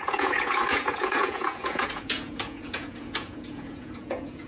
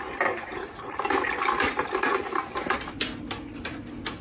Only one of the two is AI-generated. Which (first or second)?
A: first